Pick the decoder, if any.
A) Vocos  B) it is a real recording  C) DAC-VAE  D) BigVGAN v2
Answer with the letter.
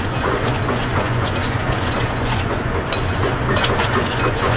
A